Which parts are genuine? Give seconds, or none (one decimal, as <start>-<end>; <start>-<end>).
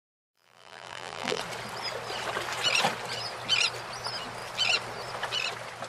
1.4-5.9